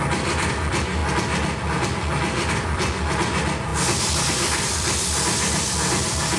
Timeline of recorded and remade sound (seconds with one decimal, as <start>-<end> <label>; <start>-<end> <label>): 0.0-1.0 remade; 1.0-2.5 recorded; 2.5-6.4 remade